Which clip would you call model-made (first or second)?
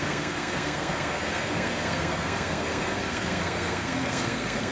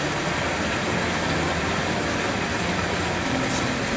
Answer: first